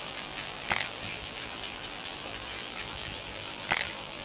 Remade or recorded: remade